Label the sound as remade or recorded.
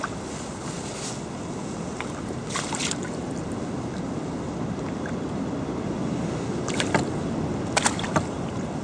recorded